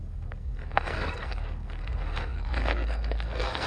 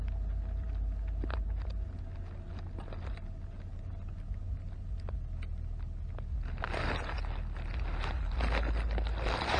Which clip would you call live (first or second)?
second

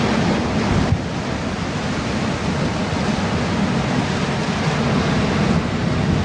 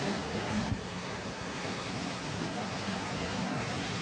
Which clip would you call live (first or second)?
first